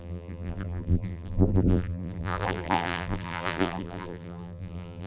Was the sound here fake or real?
fake